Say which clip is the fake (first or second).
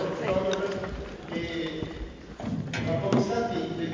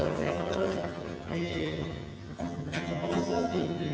second